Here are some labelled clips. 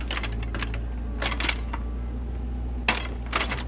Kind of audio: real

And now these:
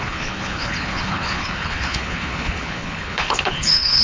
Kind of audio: fake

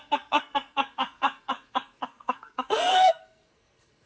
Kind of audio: fake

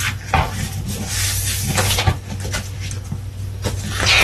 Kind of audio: real